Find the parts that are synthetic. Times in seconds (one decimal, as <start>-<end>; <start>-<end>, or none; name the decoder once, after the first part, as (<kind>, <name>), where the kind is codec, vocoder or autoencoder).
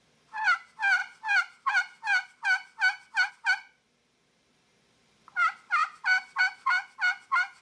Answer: none